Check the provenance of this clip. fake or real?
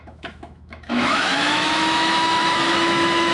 fake